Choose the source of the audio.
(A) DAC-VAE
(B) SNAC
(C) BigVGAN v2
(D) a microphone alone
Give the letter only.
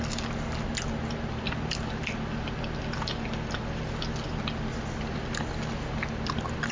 D